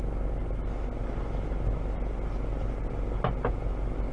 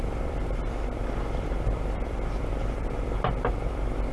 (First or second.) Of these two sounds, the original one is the first